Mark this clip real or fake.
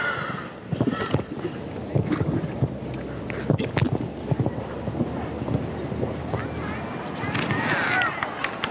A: real